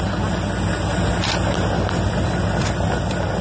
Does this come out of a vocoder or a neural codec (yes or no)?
no